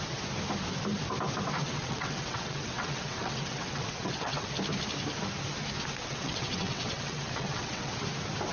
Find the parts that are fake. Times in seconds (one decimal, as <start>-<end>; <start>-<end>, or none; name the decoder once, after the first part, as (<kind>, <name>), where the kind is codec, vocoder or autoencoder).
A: 1.6-4.5 (vocoder, WaveNeXt); 6.0-7.9